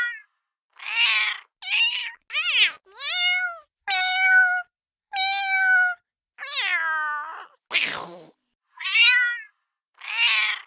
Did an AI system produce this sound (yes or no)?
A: no